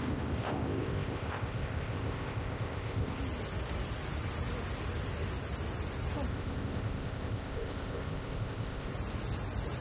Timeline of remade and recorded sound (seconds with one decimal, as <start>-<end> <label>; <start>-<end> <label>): 0.0-3.2 remade; 3.2-6.3 recorded; 6.3-8.9 remade; 8.9-9.8 recorded